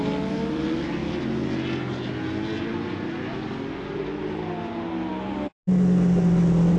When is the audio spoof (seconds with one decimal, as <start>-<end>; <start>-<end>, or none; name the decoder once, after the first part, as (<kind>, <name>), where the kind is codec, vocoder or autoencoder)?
none